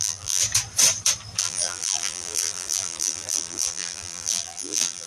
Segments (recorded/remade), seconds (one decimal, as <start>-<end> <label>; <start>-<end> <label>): 0.0-0.4 remade; 0.4-1.4 recorded; 1.4-5.1 remade